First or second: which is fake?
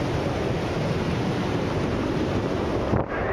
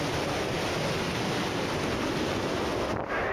first